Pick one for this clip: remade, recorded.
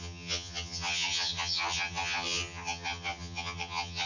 remade